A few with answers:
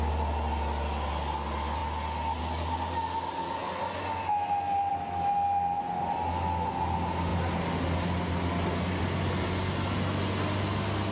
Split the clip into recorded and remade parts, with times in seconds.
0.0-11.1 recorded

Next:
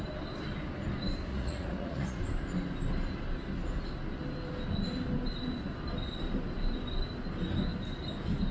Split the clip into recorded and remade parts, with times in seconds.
0.0-1.3 recorded; 1.3-2.2 remade; 2.2-8.5 recorded

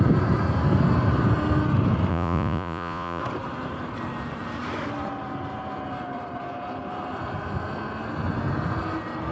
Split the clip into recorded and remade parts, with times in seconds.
0.0-2.1 recorded; 2.1-3.2 remade; 3.2-9.3 recorded